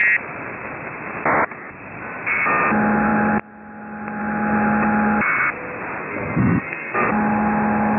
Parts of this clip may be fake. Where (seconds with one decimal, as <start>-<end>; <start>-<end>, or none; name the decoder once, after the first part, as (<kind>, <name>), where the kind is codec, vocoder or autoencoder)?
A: 6.0-7.1 (codec, SNAC)